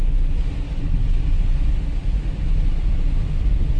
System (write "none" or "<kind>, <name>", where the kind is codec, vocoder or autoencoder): none